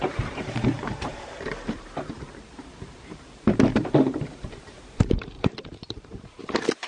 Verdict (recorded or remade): remade